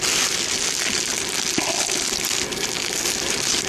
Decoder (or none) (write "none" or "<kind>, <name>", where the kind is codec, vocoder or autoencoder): none